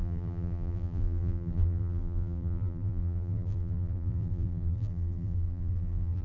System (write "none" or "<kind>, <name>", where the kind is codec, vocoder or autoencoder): vocoder, BigVGAN v2